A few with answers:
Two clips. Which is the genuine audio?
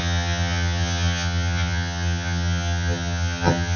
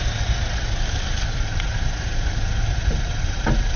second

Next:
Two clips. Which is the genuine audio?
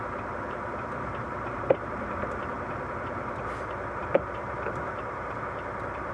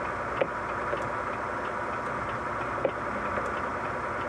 second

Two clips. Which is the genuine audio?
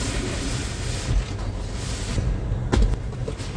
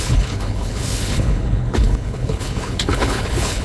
first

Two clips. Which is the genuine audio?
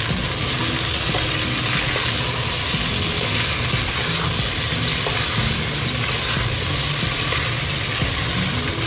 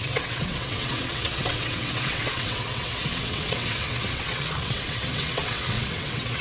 first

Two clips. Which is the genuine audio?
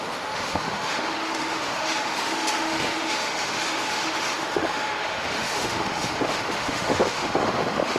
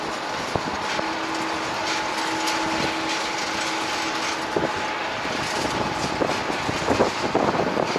second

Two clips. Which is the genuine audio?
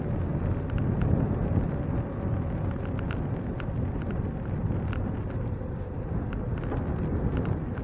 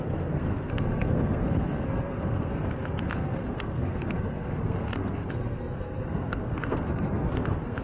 first